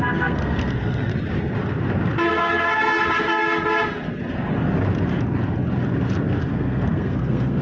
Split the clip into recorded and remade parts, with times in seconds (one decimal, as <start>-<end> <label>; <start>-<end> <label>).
0.0-1.1 remade; 1.1-2.3 recorded; 2.3-3.0 remade; 3.0-6.4 recorded; 6.4-7.6 remade